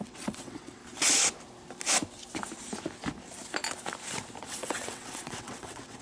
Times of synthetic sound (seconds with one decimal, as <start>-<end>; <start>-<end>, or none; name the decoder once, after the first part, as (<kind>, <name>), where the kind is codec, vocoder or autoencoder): 0.0-0.8 (vocoder, WaveNeXt); 4.4-6.0

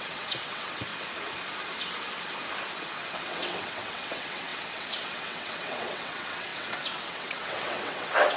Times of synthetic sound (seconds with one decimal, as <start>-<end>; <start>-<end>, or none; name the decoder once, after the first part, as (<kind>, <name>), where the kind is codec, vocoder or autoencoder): 0.0-0.9 (vocoder, WaveNeXt); 3.1-8.4

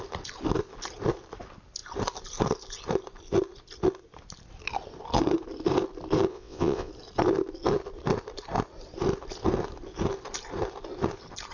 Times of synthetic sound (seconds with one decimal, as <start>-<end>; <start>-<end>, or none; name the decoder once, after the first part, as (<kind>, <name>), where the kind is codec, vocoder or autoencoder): 6.3-6.9 (vocoder, WaveNeXt)